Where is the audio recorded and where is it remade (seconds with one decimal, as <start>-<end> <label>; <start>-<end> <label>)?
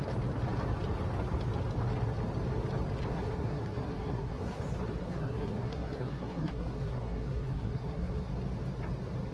0.0-3.1 recorded; 3.1-4.6 remade; 4.6-5.0 recorded; 5.0-8.3 remade; 8.3-9.3 recorded